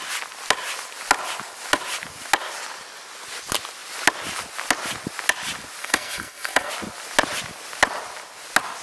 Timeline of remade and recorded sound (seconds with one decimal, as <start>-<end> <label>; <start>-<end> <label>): 0.0-5.8 recorded; 5.8-6.7 remade; 6.7-8.8 recorded